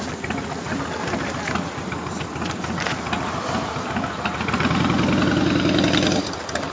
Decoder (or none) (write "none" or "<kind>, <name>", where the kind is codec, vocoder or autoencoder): none